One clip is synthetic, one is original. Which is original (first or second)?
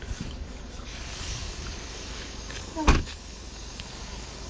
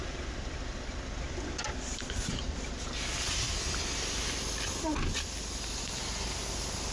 second